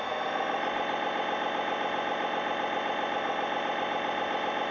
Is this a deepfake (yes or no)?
no